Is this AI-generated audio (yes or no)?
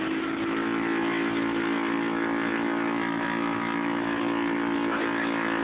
no